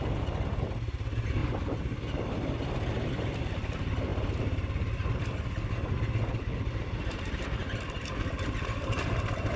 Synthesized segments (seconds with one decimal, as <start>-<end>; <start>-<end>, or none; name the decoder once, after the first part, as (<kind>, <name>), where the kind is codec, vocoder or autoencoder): none

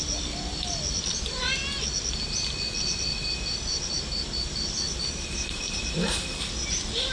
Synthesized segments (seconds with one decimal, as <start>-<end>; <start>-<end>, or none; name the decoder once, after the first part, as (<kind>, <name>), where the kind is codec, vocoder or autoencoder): none